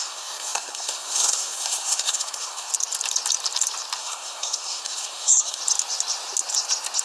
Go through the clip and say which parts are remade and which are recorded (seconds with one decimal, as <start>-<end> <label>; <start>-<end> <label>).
0.0-2.7 remade; 2.7-4.0 recorded; 4.0-5.6 remade; 5.6-7.0 recorded